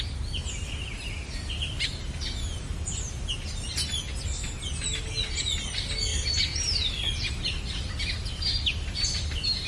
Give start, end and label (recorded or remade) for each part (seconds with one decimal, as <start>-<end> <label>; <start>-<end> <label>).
0.0-9.7 recorded